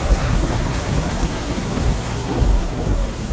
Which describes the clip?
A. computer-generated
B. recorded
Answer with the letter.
A